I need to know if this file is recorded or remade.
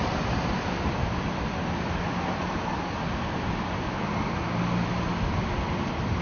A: recorded